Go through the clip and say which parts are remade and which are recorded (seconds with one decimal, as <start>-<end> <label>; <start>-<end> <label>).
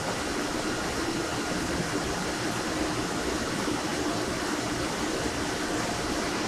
0.0-6.5 recorded